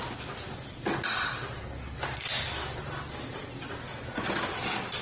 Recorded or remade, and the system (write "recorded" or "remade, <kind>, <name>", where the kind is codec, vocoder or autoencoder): recorded